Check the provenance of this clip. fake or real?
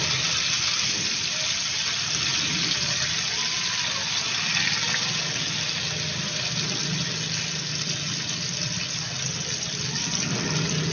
real